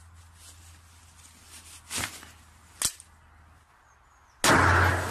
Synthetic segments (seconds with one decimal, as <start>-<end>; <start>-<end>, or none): none